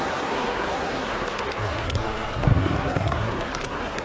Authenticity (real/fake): fake